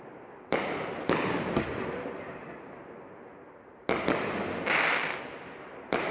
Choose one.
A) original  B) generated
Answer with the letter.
A